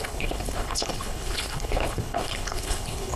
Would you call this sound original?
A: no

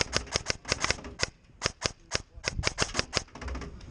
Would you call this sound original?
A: yes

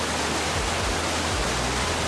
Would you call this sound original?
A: yes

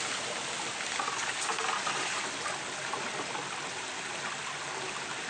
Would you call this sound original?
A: yes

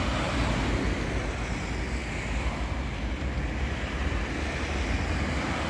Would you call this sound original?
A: yes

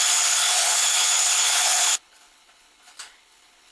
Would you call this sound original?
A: no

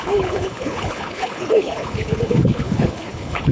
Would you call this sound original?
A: no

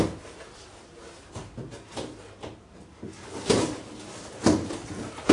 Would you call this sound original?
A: yes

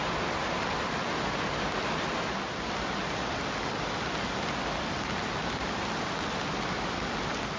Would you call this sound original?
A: yes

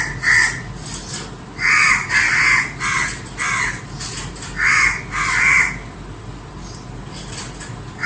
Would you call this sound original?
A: yes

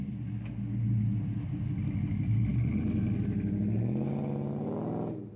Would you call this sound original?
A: yes